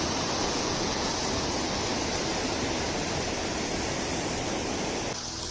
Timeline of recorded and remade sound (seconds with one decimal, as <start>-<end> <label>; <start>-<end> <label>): 0.0-0.4 recorded; 0.4-1.1 remade; 1.1-5.5 recorded